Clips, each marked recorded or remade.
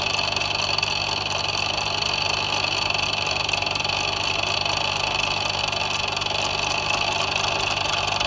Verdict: recorded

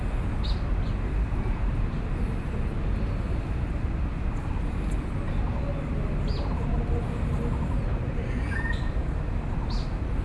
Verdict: recorded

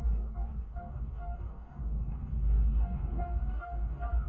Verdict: remade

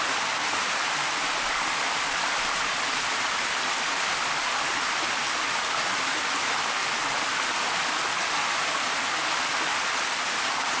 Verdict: recorded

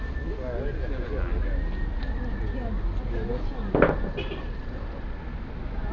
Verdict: recorded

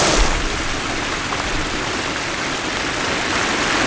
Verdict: recorded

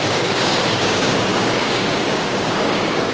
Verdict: remade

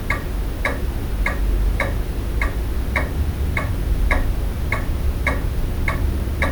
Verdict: recorded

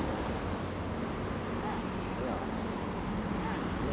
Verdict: recorded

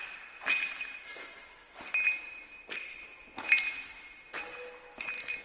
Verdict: recorded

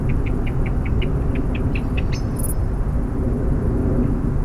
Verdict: recorded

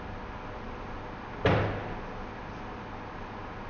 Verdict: recorded